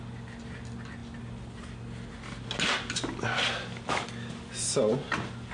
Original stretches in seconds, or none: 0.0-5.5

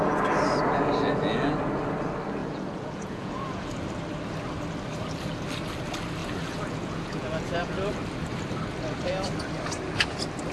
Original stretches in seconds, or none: 0.0-2.4; 3.7-6.2; 7.7-10.5